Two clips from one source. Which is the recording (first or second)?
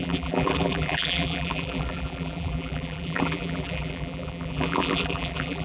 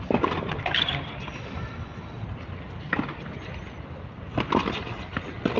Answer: second